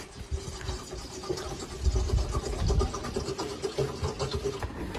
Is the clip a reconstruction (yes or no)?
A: no